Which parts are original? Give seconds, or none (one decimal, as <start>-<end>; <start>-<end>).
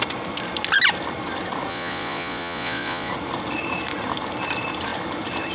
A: 0.0-1.7; 3.1-5.5